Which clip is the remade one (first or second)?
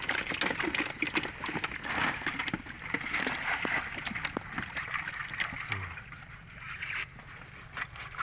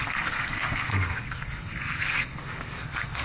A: second